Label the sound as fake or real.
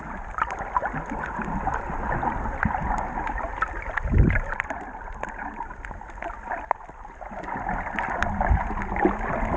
real